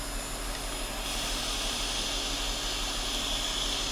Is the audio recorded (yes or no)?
yes